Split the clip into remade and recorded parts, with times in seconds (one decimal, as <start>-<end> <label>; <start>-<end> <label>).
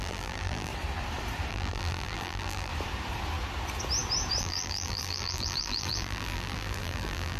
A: 0.0-0.7 remade; 0.7-1.5 recorded; 1.5-2.7 remade; 2.7-4.4 recorded; 4.4-7.4 remade